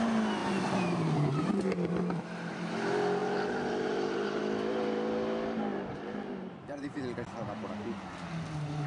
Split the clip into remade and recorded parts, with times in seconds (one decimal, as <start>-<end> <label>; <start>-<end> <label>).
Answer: 0.0-0.4 recorded; 0.4-2.7 remade; 2.7-3.2 recorded; 3.2-4.4 remade; 4.4-5.7 recorded; 5.7-7.0 remade; 7.0-8.9 recorded